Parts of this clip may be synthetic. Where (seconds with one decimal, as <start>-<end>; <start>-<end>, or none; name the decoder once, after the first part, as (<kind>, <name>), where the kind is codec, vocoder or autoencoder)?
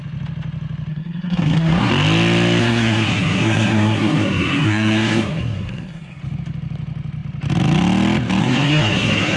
0.9-1.9 (codec, SNAC); 2.6-6.2; 8.4-9.4